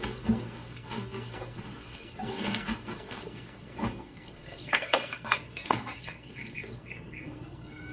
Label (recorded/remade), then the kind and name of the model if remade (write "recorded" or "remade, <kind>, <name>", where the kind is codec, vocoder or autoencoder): remade, codec, SNAC